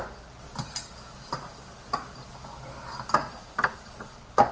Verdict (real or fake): real